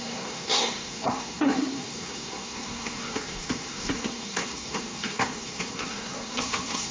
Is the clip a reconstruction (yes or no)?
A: yes